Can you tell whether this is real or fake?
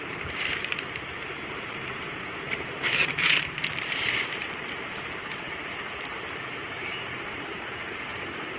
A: fake